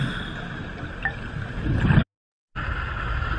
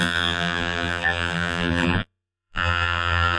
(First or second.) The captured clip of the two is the first